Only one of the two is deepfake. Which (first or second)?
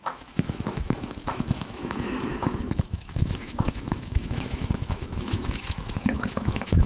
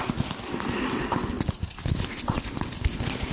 first